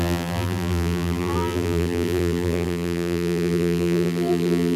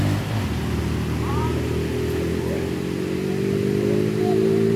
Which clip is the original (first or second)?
second